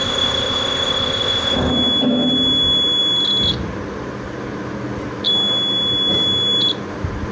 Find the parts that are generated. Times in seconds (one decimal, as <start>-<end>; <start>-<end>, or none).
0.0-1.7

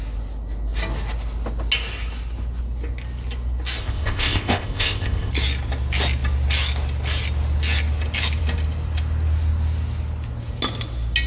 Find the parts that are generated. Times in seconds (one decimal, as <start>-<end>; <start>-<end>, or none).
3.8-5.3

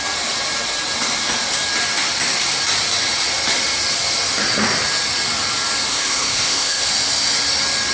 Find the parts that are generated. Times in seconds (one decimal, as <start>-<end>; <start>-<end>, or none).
5.9-6.9